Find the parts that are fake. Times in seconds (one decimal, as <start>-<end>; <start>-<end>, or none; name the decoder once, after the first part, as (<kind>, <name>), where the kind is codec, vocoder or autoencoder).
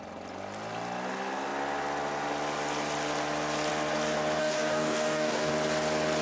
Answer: 4.4-5.5 (codec, DAC)